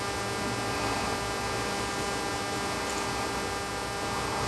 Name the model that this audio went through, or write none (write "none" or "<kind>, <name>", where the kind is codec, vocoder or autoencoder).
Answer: none